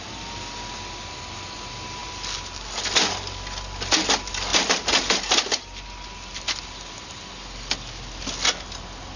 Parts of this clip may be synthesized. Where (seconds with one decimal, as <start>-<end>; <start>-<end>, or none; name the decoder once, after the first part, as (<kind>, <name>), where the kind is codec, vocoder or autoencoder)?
4.5-5.2 (vocoder, BigVGAN v2)